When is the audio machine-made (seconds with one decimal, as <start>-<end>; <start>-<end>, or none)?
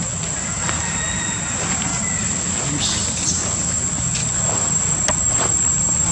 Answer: 4.2-5.2